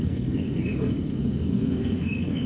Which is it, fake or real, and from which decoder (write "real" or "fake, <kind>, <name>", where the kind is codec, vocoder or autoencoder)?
fake, codec, SNAC